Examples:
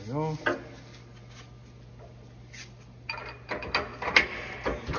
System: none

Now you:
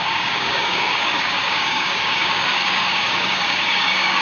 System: codec, DAC